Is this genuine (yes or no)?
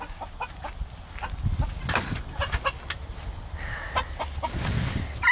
yes